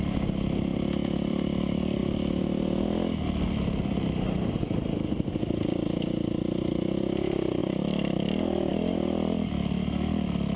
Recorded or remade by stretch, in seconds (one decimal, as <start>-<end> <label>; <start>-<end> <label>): 0.0-0.7 recorded; 0.7-1.6 remade; 1.6-10.6 recorded

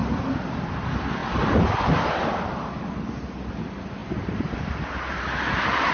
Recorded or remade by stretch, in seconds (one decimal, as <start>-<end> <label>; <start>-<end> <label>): 0.0-0.7 remade; 0.7-1.2 recorded; 1.2-2.9 remade; 2.9-4.0 recorded; 4.0-5.2 remade; 5.2-5.9 recorded

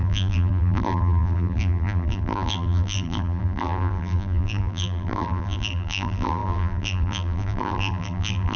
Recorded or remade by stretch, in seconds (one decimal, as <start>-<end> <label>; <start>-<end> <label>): 0.0-8.6 remade

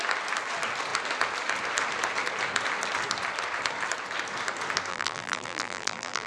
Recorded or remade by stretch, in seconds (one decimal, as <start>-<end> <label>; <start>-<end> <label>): 0.0-4.9 recorded; 4.9-6.3 remade

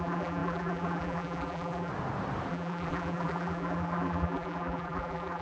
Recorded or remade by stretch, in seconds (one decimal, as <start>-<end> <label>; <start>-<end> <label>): 0.0-1.9 remade; 1.9-2.5 recorded; 2.5-5.4 remade